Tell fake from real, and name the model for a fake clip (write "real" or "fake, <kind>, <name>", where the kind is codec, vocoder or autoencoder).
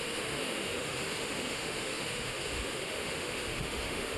fake, autoencoder, DAC-VAE